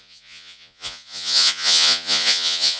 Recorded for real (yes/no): no